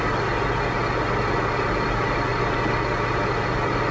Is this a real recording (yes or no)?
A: yes